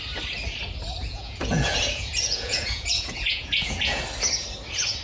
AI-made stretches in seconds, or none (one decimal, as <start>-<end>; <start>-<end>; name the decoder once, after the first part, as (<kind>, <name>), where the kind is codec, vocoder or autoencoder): 1.0-4.0 (vocoder, Vocos)